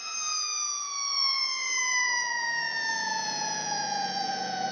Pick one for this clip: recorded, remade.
remade